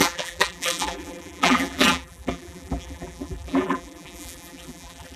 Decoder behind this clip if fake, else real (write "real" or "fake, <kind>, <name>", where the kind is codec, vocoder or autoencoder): fake, vocoder, BigVGAN v2